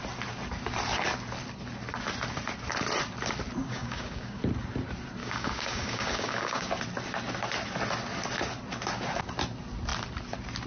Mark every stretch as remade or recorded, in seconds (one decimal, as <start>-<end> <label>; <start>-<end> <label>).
0.0-3.6 recorded; 3.6-4.4 remade; 4.4-5.2 recorded; 5.2-6.7 remade; 6.7-10.7 recorded